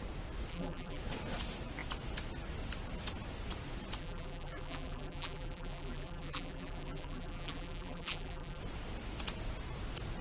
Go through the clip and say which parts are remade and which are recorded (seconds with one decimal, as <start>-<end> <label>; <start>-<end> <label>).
0.0-0.5 recorded; 0.5-1.0 remade; 1.0-4.0 recorded; 4.0-8.6 remade; 8.6-10.2 recorded